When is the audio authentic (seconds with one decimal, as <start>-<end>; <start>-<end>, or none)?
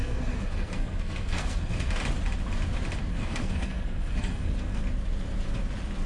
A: 2.0-3.1; 4.8-6.1